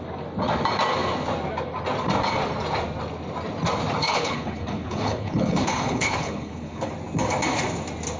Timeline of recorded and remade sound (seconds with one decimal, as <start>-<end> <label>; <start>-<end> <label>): 0.0-4.0 recorded; 4.0-6.9 remade; 6.9-8.2 recorded